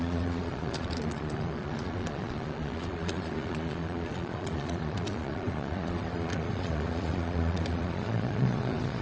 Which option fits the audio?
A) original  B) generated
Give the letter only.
B